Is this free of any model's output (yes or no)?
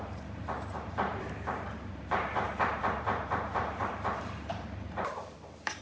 no